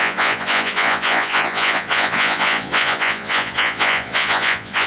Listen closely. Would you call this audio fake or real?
fake